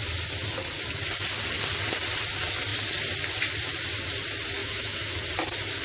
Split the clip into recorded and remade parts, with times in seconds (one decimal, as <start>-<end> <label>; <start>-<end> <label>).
0.0-4.6 recorded; 4.6-5.2 remade; 5.2-5.8 recorded